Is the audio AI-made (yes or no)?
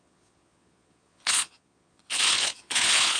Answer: yes